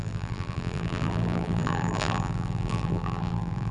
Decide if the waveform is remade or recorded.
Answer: remade